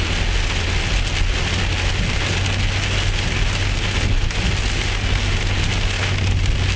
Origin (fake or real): real